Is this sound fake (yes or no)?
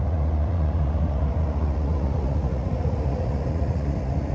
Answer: yes